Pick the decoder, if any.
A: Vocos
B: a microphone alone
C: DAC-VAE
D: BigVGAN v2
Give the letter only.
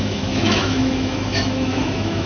C